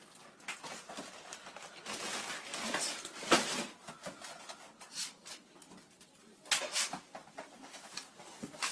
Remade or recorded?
recorded